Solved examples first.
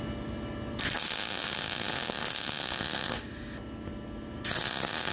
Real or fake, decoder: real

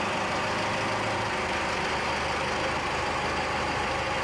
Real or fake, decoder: real